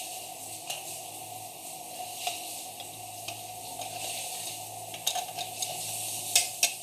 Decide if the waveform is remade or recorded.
recorded